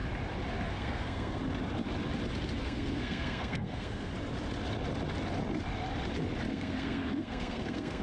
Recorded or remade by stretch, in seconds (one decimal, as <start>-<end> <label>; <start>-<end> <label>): 0.0-0.7 recorded; 0.7-1.4 remade; 1.4-2.6 recorded; 2.6-4.1 remade; 4.1-6.5 recorded; 6.5-8.0 remade